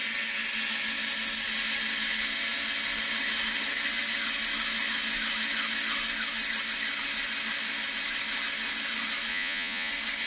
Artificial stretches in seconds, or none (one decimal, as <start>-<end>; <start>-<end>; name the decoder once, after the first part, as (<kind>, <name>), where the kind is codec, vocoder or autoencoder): 9.3-9.9 (vocoder, Vocos)